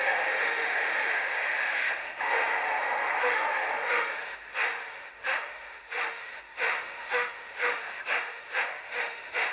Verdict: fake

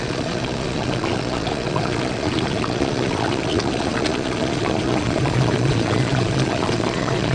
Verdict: fake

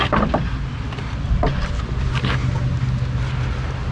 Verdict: real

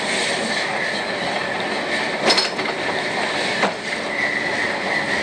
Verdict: real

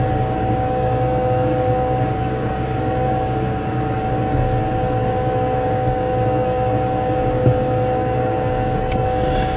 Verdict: fake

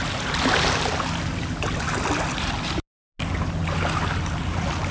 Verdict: real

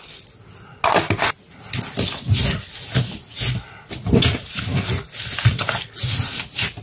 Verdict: real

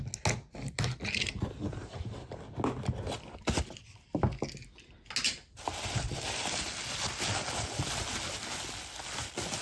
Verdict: real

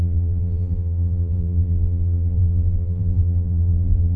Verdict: fake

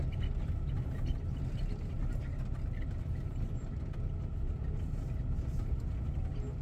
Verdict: real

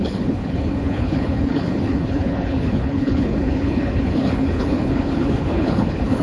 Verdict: fake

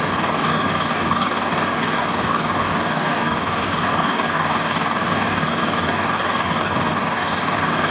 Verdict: fake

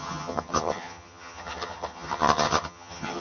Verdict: fake